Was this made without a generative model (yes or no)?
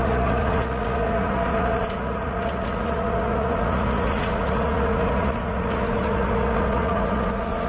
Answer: no